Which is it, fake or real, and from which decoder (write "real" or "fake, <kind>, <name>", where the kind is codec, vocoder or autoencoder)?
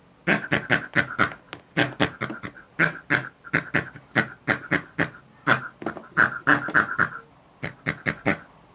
real